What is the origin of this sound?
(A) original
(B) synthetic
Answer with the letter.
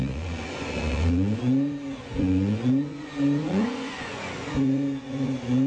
B